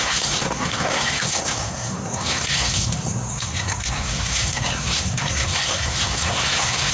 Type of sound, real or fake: fake